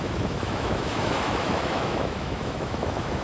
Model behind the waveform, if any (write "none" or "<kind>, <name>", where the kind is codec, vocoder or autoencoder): autoencoder, DAC-VAE